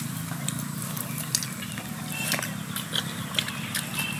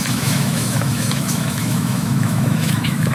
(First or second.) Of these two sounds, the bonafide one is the first